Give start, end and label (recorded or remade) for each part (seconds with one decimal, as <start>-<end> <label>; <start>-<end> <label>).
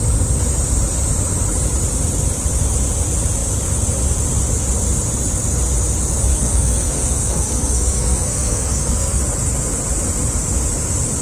0.0-6.3 recorded; 6.3-9.2 remade; 9.2-11.2 recorded